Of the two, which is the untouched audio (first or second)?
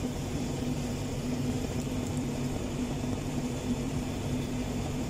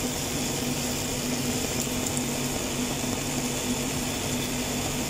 second